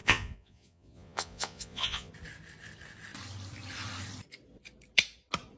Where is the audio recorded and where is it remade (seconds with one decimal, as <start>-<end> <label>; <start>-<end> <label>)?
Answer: 0.0-2.1 remade; 2.1-5.6 recorded